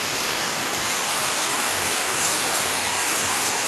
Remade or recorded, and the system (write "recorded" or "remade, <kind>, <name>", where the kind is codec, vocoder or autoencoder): remade, codec, DAC